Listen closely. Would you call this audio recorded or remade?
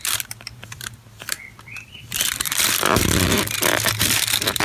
remade